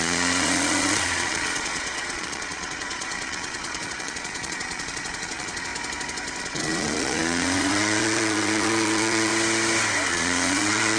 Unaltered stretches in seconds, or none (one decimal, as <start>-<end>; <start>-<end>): 5.7-6.4; 9.3-10.1